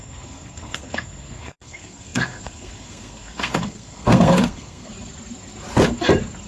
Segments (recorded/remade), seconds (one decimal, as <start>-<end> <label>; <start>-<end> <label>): 0.0-4.9 remade; 4.9-6.5 recorded